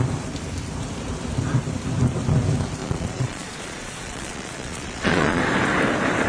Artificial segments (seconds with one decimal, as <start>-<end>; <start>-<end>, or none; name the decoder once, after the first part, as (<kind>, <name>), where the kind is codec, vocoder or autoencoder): 2.8-5.4 (vocoder, Vocos)